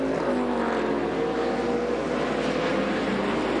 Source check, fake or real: real